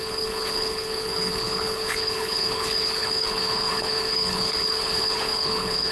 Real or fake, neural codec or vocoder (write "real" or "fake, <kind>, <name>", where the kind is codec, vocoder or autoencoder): fake, codec, HILCodec